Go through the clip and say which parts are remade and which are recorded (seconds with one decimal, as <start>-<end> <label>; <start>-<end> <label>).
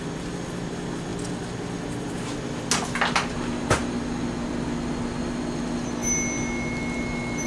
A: 0.0-7.5 recorded